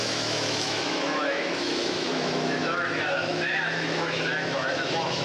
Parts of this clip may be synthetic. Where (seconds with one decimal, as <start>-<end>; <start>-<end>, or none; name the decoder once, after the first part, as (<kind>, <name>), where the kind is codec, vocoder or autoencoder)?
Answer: 0.0-5.2 (autoencoder, DAC-VAE)